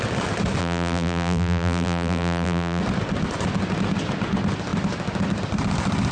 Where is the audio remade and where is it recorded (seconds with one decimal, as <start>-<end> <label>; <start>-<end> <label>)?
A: 0.0-0.6 recorded; 0.6-2.8 remade; 2.8-6.1 recorded